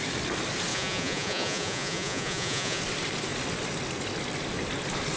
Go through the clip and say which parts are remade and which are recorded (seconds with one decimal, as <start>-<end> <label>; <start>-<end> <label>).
0.0-0.7 recorded; 0.7-2.8 remade; 2.8-5.2 recorded